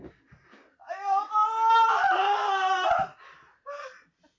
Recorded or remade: recorded